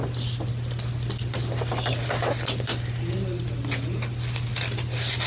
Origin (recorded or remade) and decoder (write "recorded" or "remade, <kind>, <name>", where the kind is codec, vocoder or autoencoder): recorded